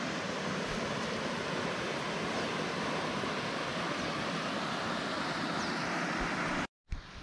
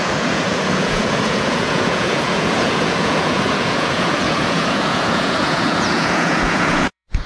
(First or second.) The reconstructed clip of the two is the second